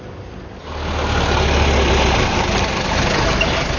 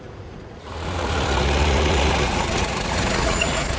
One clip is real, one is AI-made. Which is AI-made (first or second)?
second